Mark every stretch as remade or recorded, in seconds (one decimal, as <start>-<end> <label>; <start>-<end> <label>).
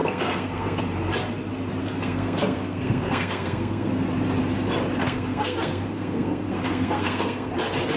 0.0-0.8 remade; 0.8-1.8 recorded; 1.8-3.9 remade; 3.9-5.0 recorded; 5.0-7.5 remade; 7.5-8.0 recorded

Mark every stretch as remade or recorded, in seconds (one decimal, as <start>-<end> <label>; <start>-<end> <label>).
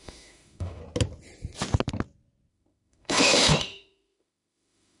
0.0-0.8 remade; 0.8-2.5 recorded; 2.5-5.0 remade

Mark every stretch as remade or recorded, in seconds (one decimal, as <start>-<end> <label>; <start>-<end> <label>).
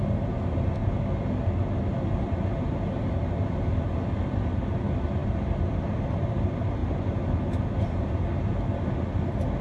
0.0-9.6 recorded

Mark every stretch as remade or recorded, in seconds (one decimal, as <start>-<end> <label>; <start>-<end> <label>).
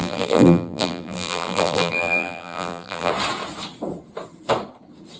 0.0-3.1 remade; 3.1-5.2 recorded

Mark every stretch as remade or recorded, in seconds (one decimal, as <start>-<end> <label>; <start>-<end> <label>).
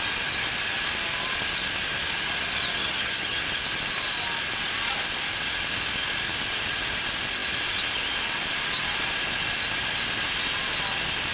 0.0-2.8 recorded; 2.8-3.4 remade; 3.4-11.3 recorded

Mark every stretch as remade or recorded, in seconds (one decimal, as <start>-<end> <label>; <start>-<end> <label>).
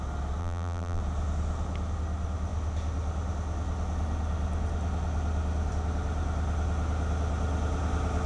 0.0-0.4 recorded; 0.4-1.0 remade; 1.0-8.3 recorded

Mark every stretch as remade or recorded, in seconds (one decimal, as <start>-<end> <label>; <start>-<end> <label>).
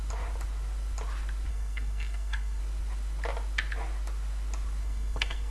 0.0-1.5 recorded; 1.5-2.6 remade; 2.6-4.8 recorded; 4.8-5.5 remade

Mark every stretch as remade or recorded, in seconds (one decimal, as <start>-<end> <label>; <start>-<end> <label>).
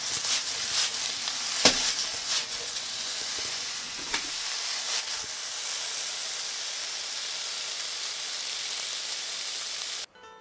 0.0-2.1 recorded; 2.1-4.3 remade; 4.3-10.4 recorded